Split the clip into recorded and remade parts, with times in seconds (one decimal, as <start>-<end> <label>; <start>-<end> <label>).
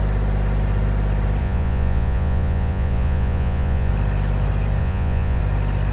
0.0-1.4 recorded; 1.4-3.9 remade; 3.9-4.8 recorded; 4.8-5.4 remade; 5.4-5.9 recorded